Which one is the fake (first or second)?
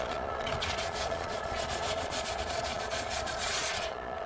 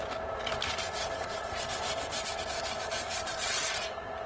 first